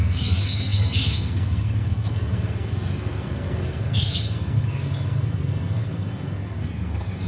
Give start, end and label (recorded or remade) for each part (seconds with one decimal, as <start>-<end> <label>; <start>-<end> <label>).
0.0-7.3 remade